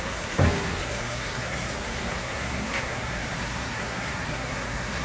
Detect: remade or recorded remade